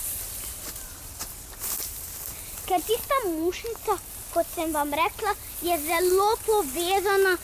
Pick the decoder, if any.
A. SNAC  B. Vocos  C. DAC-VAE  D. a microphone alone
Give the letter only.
D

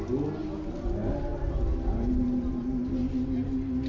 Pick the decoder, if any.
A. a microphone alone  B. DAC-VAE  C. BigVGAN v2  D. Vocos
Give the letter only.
A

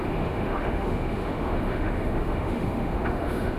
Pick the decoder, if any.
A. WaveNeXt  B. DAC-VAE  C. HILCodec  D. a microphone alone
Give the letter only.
B